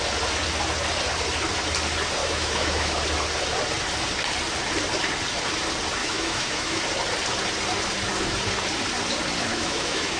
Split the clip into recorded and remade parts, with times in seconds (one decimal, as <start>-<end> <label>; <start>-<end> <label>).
0.0-2.2 recorded; 2.2-3.0 remade; 3.0-6.0 recorded; 6.0-6.8 remade; 6.8-9.5 recorded; 9.5-10.2 remade